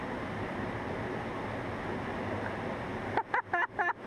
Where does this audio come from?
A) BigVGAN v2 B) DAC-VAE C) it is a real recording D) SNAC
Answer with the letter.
C